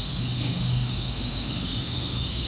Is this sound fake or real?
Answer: fake